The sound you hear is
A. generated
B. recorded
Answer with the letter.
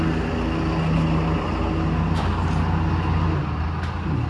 B